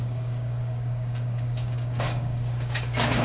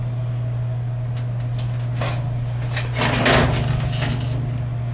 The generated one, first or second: first